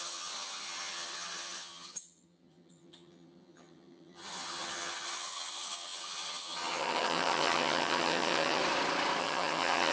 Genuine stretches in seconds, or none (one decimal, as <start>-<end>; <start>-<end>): 8.6-9.2